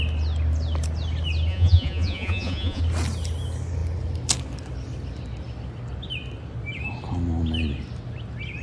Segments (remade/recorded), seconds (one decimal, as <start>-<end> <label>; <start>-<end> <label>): 0.0-1.5 recorded; 1.5-2.8 remade; 2.8-8.6 recorded